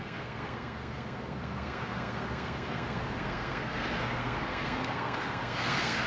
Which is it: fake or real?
fake